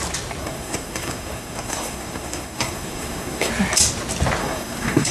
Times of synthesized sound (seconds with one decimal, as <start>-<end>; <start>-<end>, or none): 0.4-3.5; 4.4-5.1